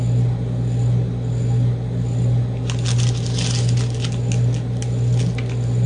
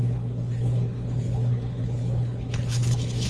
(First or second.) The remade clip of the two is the second